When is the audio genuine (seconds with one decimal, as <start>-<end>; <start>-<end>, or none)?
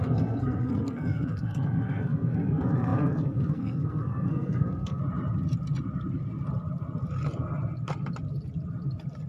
5.0-9.3